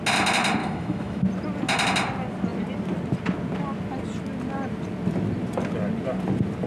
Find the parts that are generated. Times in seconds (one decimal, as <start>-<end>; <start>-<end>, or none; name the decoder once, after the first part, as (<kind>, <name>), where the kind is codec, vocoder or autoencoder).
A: 0.6-1.2 (autoencoder, DAC-VAE)